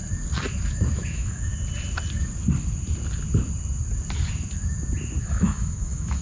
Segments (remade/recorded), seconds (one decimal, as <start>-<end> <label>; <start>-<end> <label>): 0.0-0.7 recorded; 0.7-1.5 remade; 1.5-5.2 recorded; 5.2-6.2 remade